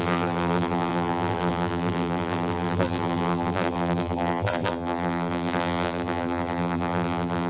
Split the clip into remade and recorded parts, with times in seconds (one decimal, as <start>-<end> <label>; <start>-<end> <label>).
0.0-7.5 remade